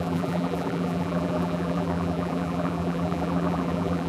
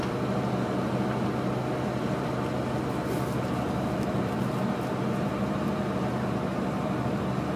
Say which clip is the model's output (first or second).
first